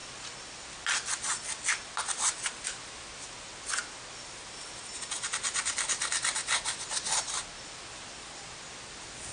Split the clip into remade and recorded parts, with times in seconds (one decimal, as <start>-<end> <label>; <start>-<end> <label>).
0.0-9.3 recorded